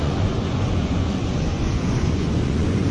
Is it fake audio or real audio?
fake